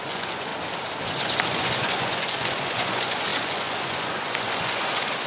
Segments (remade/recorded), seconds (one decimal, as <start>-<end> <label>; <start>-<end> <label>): 0.0-0.5 remade; 0.5-1.0 recorded; 1.0-5.3 remade